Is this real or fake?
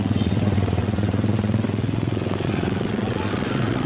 fake